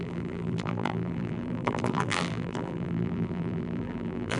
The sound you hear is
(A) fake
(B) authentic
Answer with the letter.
A